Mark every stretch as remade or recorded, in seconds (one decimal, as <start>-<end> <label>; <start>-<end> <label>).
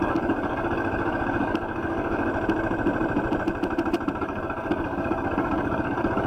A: 0.0-2.3 remade; 2.3-4.2 recorded; 4.2-6.3 remade